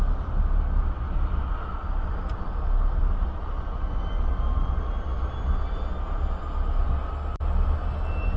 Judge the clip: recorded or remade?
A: recorded